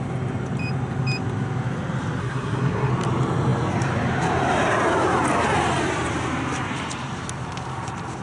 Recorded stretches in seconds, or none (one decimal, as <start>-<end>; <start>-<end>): 0.0-2.2; 2.9-8.2